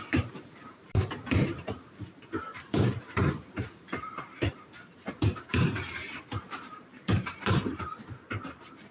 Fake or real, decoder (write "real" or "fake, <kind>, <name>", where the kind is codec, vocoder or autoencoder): fake, vocoder, BigVGAN v2